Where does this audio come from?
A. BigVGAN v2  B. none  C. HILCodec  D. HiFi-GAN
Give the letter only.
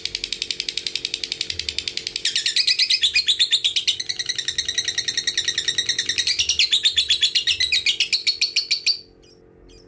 B